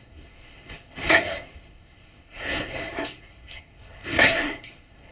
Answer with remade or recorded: remade